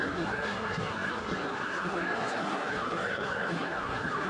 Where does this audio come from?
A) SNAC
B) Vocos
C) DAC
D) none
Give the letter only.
A